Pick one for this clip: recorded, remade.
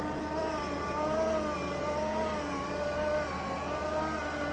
recorded